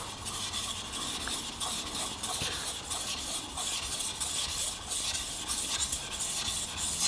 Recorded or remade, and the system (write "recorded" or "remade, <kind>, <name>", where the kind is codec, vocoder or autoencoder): recorded